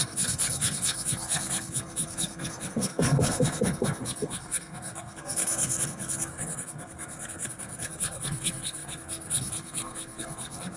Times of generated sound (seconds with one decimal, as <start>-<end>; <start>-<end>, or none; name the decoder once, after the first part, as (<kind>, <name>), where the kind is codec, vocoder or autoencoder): 0.0-10.8 (codec, SNAC)

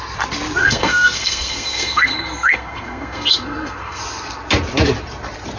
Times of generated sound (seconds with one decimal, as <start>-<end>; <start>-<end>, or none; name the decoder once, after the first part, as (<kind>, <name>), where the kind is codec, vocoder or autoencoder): 0.6-4.0 (codec, SNAC)